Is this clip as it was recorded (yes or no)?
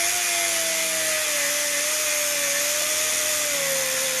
yes